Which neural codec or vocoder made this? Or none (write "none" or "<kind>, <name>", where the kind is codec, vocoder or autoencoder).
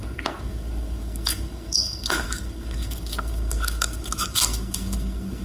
codec, SNAC